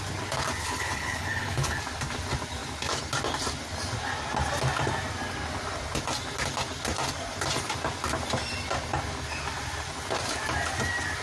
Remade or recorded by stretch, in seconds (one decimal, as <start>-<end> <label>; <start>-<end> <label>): 0.0-0.6 recorded; 0.6-1.8 remade; 1.8-11.2 recorded